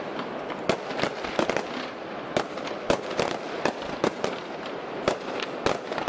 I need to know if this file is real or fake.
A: fake